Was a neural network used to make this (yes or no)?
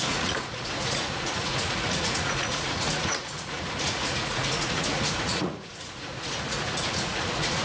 yes